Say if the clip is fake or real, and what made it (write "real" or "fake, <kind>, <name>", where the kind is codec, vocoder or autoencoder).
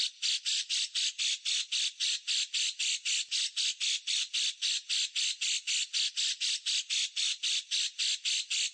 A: real